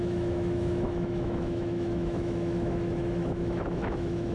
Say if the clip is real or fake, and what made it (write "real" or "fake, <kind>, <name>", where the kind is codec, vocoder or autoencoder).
fake, autoencoder, DAC-VAE